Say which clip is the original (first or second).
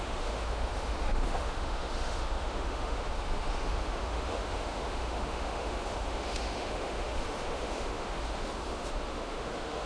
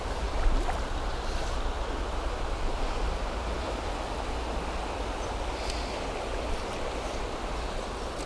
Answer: second